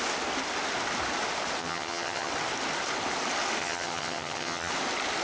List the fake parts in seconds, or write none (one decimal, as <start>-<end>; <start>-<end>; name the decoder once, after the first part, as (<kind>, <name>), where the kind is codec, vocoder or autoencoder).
1.6-2.3 (vocoder, HiFi-GAN); 3.6-4.7